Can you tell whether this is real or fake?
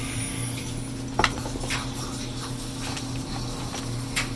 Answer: real